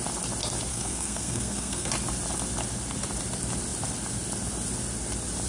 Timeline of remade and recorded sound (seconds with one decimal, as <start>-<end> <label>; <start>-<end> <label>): 0.0-0.7 recorded; 0.7-1.9 remade; 1.9-5.5 recorded